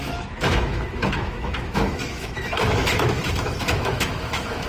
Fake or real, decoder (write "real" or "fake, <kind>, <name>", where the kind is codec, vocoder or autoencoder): fake, autoencoder, DAC-VAE